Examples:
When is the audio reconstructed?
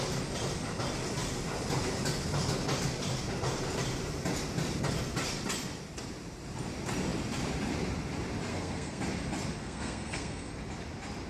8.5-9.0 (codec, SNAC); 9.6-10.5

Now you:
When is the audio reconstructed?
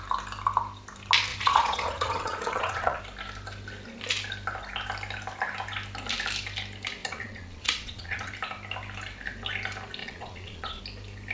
1.3-3.0 (vocoder, Vocos); 7.0-8.3; 10.0-10.8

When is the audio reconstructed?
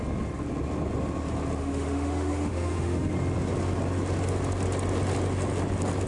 1.6-3.1 (autoencoder, DAC-VAE)